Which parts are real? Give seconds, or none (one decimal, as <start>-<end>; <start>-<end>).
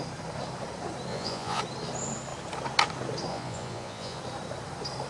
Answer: 0.0-1.1; 1.6-3.3; 4.2-5.1